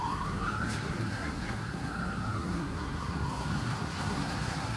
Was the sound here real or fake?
fake